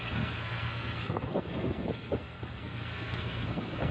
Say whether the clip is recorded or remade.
remade